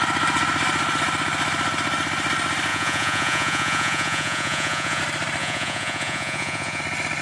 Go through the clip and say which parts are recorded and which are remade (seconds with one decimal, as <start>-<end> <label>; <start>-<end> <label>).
0.0-2.7 recorded; 2.7-5.0 remade; 5.0-5.4 recorded; 5.4-6.8 remade; 6.8-7.2 recorded